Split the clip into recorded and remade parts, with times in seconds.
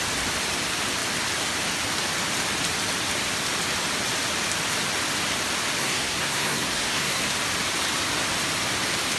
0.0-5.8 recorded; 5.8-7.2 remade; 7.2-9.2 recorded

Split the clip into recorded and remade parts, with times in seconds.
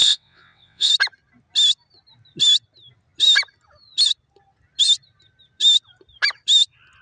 0.0-0.9 remade; 0.9-7.0 recorded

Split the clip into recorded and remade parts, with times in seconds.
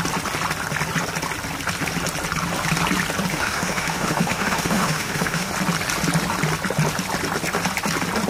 0.0-3.3 recorded; 3.3-5.5 remade; 5.5-8.3 recorded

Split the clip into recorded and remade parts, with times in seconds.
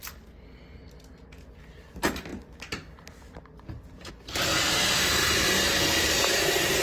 0.0-4.5 recorded; 4.5-6.8 remade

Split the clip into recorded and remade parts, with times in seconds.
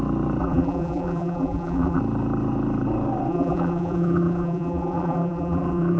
0.0-0.4 recorded; 0.4-2.0 remade; 2.0-3.3 recorded; 3.3-6.0 remade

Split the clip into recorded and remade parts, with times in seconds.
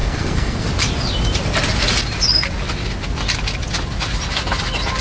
0.0-0.7 remade; 0.7-5.0 recorded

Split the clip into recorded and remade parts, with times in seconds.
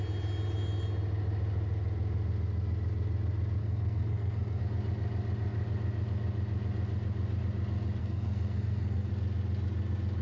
0.0-3.6 recorded; 3.6-4.6 remade; 4.6-8.0 recorded; 8.0-9.1 remade; 9.1-10.2 recorded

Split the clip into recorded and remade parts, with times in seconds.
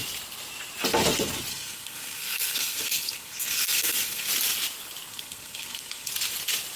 0.0-1.5 recorded; 1.5-4.3 remade; 4.3-5.1 recorded; 5.1-6.1 remade; 6.1-6.8 recorded